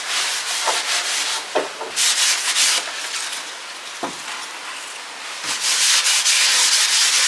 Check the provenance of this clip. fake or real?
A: real